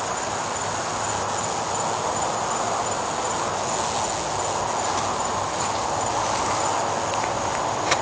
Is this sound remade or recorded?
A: recorded